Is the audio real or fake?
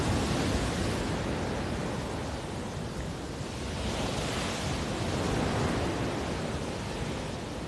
real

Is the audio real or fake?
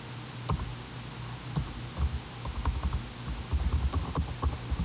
real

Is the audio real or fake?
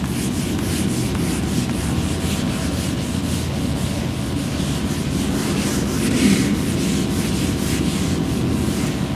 real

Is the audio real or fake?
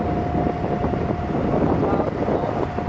real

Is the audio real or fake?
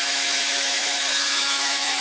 fake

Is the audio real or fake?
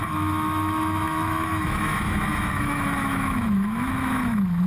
fake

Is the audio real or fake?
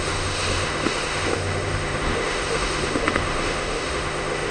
fake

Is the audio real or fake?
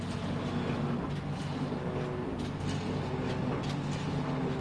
real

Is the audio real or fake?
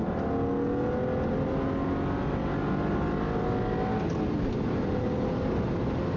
real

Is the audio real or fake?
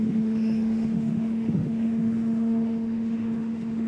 fake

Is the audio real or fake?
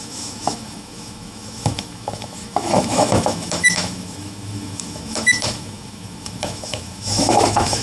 fake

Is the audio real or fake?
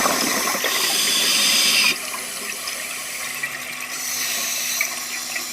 real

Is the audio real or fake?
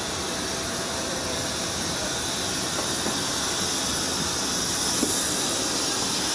real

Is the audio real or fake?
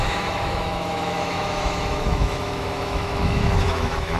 fake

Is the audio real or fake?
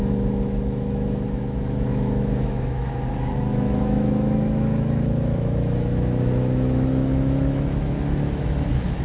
fake